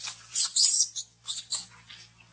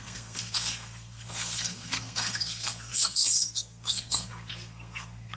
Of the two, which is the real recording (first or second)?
first